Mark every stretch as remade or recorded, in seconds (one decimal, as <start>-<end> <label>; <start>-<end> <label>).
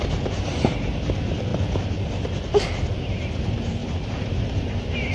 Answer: 0.0-3.8 recorded; 3.8-5.1 remade